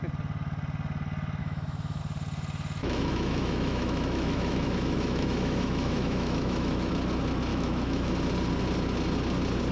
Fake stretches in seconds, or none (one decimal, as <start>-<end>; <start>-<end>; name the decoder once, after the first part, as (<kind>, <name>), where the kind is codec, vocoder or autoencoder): 1.4-2.0 (autoencoder, DAC-VAE); 2.8-6.9; 7.5-8.1